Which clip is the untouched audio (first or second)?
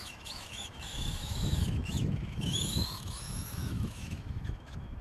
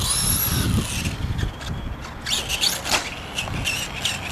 second